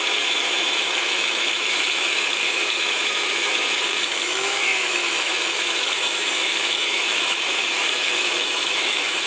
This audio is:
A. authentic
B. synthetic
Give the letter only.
B